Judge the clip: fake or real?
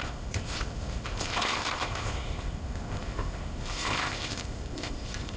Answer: fake